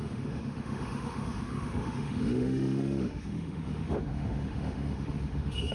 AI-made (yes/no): yes